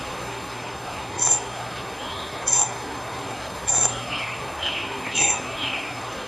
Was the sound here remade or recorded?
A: remade